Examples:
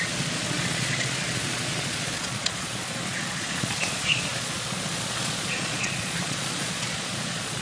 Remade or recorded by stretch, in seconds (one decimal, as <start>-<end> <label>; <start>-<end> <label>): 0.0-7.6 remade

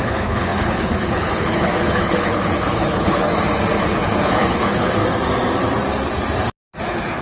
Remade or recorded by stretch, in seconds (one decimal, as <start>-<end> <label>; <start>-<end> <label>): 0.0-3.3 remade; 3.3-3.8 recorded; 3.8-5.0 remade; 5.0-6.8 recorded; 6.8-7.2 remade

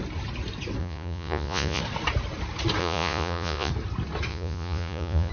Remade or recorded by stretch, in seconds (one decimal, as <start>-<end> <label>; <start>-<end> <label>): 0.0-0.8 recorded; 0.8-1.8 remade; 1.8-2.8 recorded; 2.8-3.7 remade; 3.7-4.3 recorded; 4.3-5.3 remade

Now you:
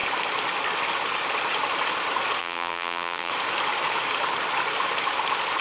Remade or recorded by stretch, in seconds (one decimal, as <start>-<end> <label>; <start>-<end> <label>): 0.0-2.4 recorded; 2.4-3.3 remade; 3.3-5.6 recorded

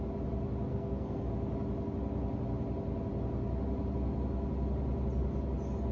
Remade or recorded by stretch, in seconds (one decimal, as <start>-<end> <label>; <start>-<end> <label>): 0.0-0.7 recorded; 0.7-1.3 remade; 1.3-5.9 recorded